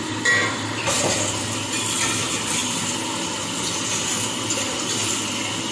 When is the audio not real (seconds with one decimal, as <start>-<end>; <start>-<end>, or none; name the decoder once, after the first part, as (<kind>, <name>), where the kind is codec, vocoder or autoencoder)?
none